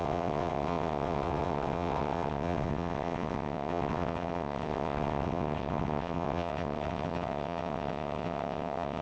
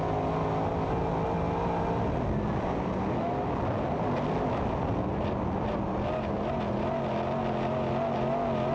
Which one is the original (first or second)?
second